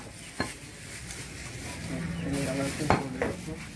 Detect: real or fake real